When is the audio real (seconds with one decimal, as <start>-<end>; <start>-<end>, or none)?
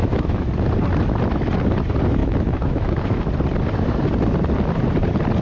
0.5-2.2; 3.3-5.4